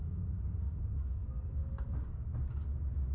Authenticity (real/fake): fake